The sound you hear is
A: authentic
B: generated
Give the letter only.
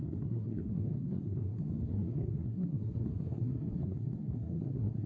B